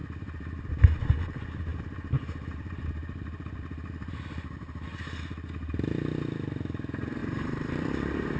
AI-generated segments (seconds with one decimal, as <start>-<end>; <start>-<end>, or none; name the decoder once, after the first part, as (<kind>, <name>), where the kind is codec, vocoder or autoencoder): 0.0-1.0 (vocoder, BigVGAN v2); 1.7-4.1; 7.2-8.4